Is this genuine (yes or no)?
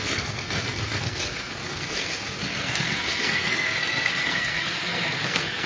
no